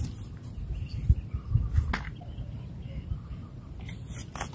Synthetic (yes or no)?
no